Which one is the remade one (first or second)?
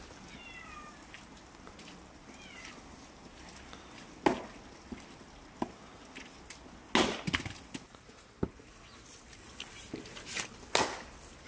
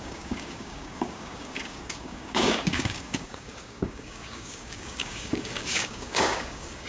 second